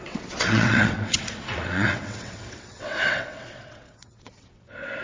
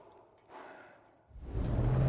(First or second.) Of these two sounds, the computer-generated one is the first